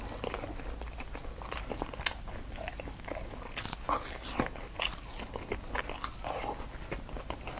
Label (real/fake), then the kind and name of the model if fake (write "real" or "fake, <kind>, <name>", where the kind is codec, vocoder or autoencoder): real